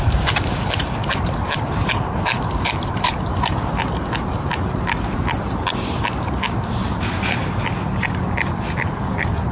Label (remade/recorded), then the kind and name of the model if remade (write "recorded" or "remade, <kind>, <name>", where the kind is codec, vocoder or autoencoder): remade, vocoder, BigVGAN v2